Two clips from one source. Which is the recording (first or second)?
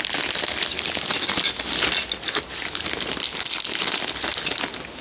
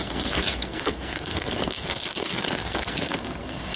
first